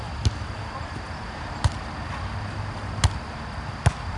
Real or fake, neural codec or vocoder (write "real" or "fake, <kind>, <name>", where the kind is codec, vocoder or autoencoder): real